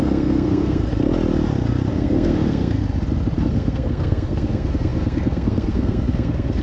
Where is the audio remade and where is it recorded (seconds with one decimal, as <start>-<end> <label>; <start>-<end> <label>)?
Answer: 0.0-0.9 remade; 0.9-1.9 recorded; 1.9-2.8 remade; 2.8-3.4 recorded; 3.4-6.6 remade